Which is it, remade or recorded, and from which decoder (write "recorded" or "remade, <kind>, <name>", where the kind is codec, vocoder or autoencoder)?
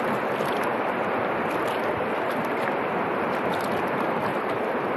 recorded